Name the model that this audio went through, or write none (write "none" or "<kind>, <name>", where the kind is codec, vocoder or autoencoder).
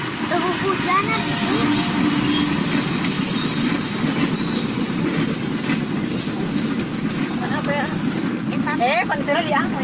none